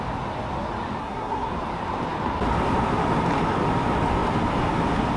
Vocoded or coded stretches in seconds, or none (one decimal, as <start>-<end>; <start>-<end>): 1.0-1.5